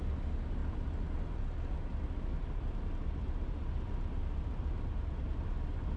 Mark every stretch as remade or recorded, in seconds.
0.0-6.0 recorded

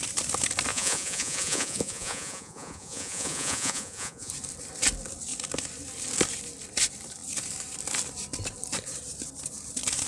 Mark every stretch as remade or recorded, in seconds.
0.0-0.7 recorded; 0.7-4.3 remade; 4.3-10.1 recorded

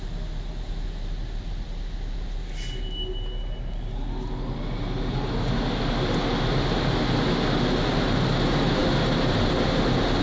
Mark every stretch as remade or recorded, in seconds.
0.0-10.2 recorded

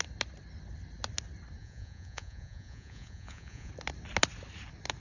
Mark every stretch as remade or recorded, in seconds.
0.0-1.6 recorded; 1.6-3.7 remade; 3.7-5.0 recorded